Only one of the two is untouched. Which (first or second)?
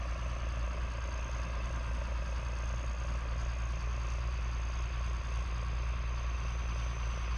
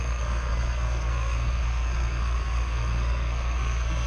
first